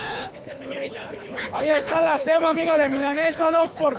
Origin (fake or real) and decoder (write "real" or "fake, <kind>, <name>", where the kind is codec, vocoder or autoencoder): fake, codec, HILCodec